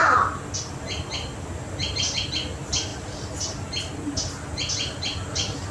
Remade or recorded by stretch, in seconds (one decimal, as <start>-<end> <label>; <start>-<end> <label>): 0.0-5.7 recorded